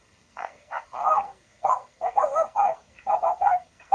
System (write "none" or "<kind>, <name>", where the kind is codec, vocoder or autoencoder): codec, SNAC